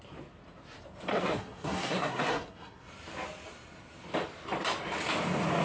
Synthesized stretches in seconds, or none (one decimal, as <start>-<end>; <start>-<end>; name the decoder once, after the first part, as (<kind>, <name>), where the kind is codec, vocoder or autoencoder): 1.1-2.9 (codec, SNAC)